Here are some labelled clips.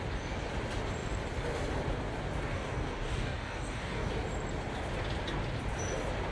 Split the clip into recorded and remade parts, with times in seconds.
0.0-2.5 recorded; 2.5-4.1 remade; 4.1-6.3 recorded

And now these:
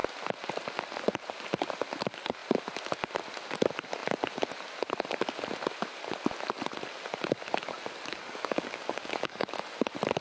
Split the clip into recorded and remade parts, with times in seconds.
0.0-8.1 recorded; 8.1-9.5 remade; 9.5-10.2 recorded

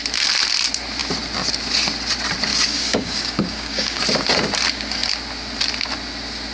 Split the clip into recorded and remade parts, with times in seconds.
0.0-2.5 recorded; 2.5-4.0 remade; 4.0-6.5 recorded

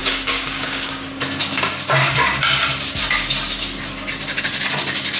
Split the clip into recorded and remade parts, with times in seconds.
0.0-0.9 remade; 0.9-5.2 recorded

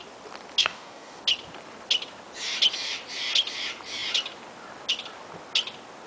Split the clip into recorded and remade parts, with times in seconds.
0.0-0.6 recorded; 0.6-1.2 remade; 1.2-6.1 recorded

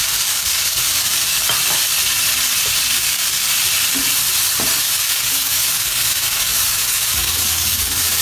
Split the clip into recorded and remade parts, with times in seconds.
0.0-1.4 remade; 1.4-2.9 recorded; 2.9-3.5 remade; 3.5-4.8 recorded; 4.8-8.2 remade